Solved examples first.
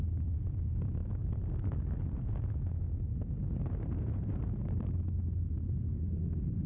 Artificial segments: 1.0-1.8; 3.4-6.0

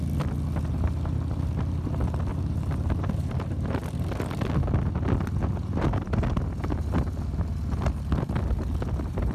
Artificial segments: 2.3-3.8; 5.6-6.3

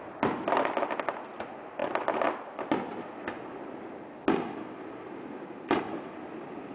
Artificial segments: none

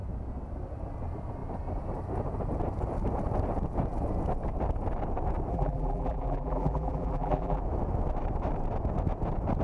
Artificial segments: 5.5-7.6

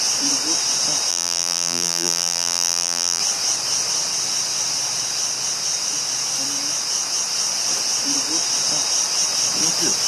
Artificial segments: 1.1-3.2

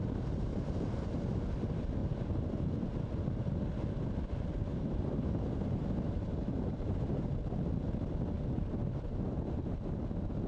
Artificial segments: 0.5-1.2; 2.0-2.8; 4.7-7.3

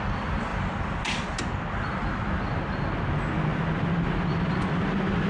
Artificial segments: none